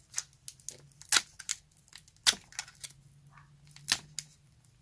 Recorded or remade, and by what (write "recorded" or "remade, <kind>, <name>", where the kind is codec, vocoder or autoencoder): recorded